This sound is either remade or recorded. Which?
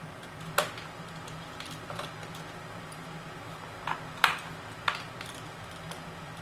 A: recorded